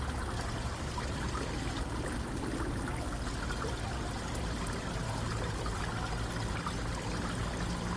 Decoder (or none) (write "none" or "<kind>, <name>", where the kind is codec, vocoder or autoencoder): none